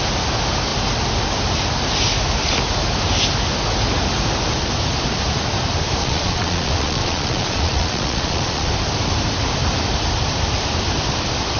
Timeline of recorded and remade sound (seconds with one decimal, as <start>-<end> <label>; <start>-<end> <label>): 0.0-6.0 recorded; 6.0-8.7 remade; 8.7-11.6 recorded